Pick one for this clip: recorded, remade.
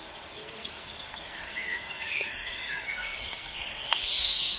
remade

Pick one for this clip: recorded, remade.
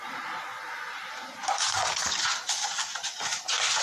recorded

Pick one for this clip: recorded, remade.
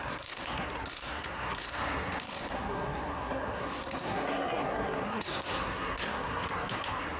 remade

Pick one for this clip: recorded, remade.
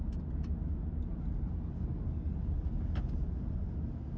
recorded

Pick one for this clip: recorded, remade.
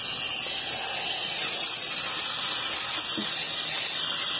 recorded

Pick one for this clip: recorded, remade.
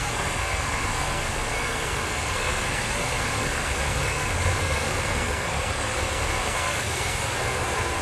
remade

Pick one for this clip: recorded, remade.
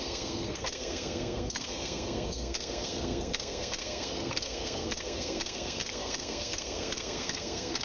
remade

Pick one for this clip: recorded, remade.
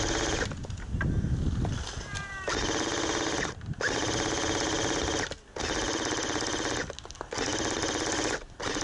recorded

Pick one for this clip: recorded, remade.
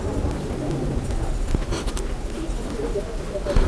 recorded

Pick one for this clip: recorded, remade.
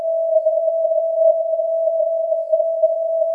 remade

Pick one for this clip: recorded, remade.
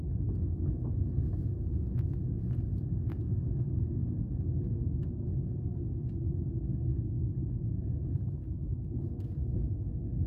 recorded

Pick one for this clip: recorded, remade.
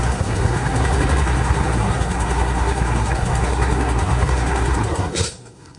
remade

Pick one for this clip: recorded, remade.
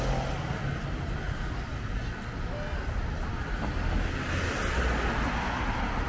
recorded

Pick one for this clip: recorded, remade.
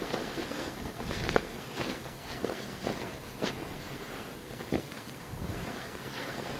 remade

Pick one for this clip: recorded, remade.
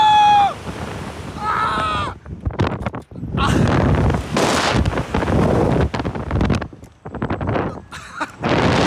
recorded